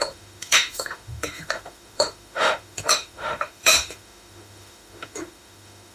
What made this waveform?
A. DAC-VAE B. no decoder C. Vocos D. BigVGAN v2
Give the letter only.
A